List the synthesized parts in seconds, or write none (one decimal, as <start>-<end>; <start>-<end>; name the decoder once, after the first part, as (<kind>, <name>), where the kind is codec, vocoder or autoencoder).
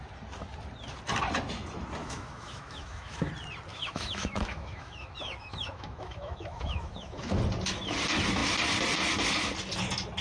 2.0-3.3 (autoencoder, DAC-VAE); 3.7-7.4